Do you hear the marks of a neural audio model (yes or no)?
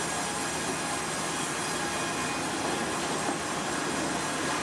no